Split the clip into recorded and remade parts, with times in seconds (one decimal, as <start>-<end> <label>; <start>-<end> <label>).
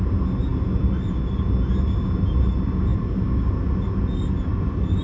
0.0-5.0 recorded